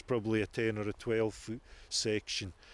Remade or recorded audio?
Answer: recorded